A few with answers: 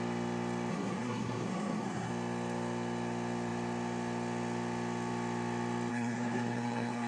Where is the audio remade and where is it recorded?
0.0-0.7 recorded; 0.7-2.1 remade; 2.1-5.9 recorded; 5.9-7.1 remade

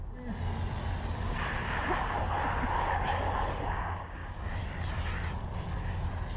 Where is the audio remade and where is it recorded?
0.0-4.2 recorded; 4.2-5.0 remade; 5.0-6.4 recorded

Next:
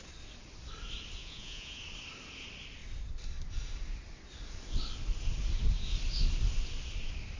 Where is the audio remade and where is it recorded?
0.0-1.2 recorded; 1.2-1.8 remade; 1.8-7.4 recorded